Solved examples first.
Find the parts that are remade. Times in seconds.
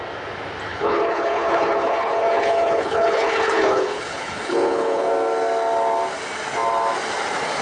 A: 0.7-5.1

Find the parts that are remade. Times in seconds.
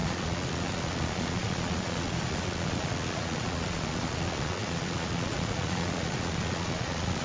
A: 0.0-7.2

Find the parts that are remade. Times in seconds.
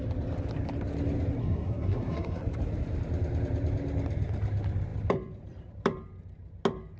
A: 1.4-2.4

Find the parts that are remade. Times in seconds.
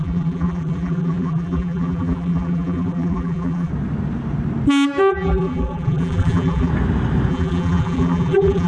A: 0.0-3.7; 5.1-6.7; 7.3-8.7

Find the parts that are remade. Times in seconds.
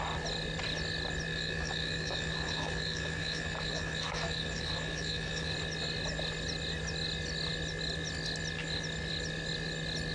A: 1.3-5.5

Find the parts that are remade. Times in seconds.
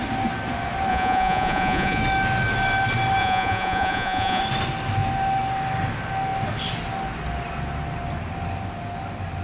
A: 0.9-2.0; 3.2-4.4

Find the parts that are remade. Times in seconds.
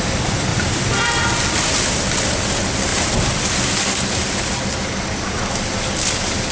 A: 0.5-2.1